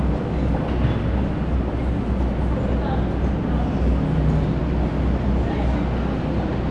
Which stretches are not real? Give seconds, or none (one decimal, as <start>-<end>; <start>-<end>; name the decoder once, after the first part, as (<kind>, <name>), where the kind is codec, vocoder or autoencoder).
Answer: none